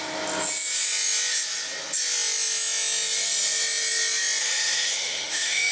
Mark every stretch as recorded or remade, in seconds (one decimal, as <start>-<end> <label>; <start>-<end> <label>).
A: 0.0-4.4 recorded; 4.4-5.7 remade